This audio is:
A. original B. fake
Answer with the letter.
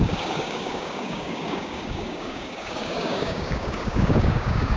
B